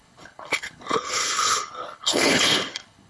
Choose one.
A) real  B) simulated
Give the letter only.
B